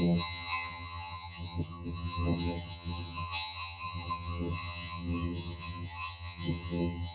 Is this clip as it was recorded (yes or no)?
no